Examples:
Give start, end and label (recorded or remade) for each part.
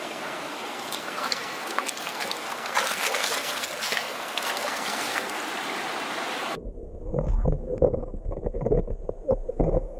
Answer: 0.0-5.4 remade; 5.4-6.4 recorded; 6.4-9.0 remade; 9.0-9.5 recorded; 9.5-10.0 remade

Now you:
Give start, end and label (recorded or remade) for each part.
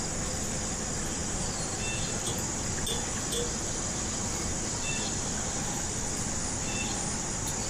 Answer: 0.0-7.7 recorded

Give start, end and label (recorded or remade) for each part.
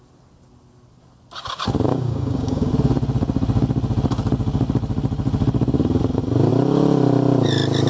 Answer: 0.0-1.9 recorded; 1.9-2.7 remade; 2.7-7.9 recorded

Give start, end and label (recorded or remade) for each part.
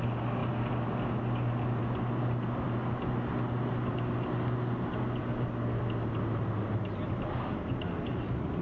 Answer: 0.0-8.6 recorded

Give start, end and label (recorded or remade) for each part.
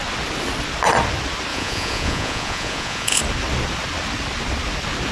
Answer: 0.0-1.5 recorded; 1.5-3.2 remade; 3.2-5.1 recorded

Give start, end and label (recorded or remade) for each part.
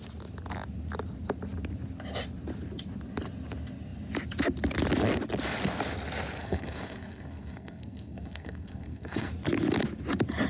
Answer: 0.0-6.4 recorded; 6.4-9.3 remade; 9.3-10.5 recorded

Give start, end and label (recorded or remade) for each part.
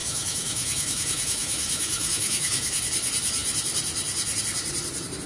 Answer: 0.0-2.8 remade; 2.8-5.3 recorded